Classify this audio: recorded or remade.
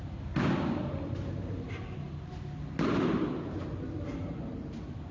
recorded